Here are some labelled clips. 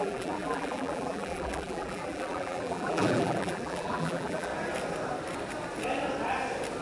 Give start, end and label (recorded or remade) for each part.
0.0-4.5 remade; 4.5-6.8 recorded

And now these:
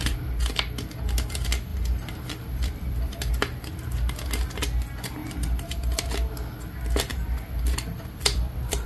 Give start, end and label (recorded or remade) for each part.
0.0-1.7 recorded; 1.7-3.3 remade; 3.3-5.2 recorded; 5.2-6.0 remade; 6.0-7.1 recorded; 7.1-8.9 remade

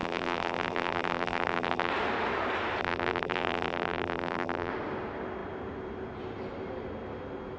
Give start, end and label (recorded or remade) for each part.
0.0-1.9 remade; 1.9-2.8 recorded; 2.8-4.7 remade; 4.7-7.6 recorded